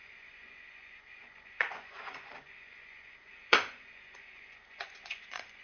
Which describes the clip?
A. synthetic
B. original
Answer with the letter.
A